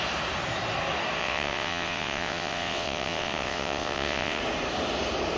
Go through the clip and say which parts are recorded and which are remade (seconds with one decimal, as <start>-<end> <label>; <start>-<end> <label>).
0.0-1.2 recorded; 1.2-4.4 remade; 4.4-5.4 recorded